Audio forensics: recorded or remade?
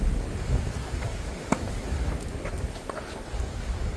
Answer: remade